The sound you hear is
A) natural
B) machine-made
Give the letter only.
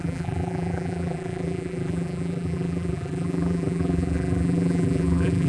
B